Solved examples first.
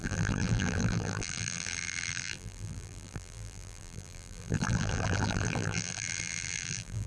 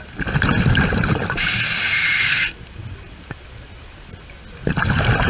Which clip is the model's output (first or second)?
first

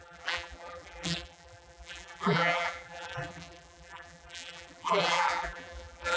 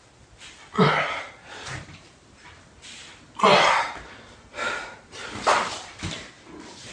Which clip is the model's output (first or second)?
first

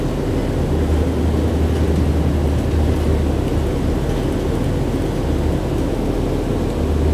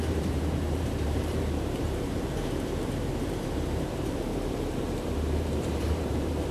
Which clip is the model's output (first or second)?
second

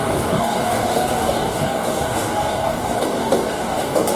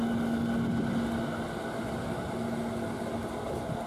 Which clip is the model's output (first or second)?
first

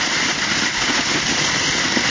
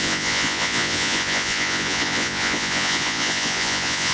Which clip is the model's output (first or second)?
second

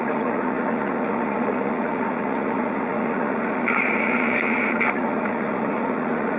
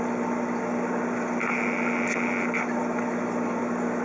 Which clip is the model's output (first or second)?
first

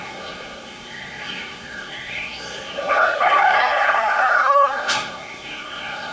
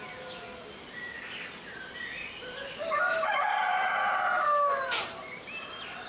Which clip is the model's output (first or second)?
first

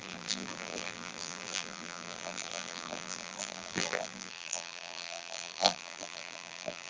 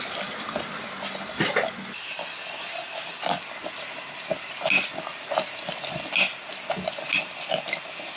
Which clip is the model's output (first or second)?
first